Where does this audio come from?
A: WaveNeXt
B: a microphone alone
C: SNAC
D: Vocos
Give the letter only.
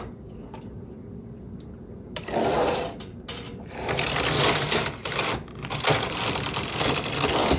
B